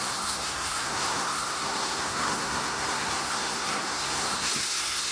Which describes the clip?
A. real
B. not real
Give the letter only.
B